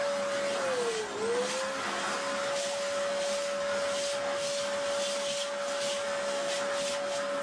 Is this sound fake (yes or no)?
no